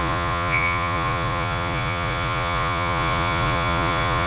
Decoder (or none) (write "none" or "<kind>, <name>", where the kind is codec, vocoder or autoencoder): vocoder, Vocos